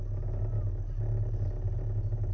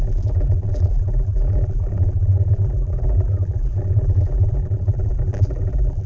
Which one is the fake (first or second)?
second